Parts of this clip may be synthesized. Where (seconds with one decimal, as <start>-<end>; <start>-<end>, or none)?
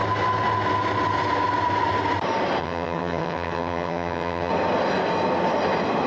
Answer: 2.6-4.5